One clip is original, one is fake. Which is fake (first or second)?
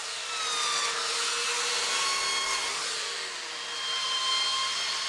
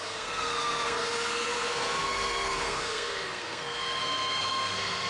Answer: second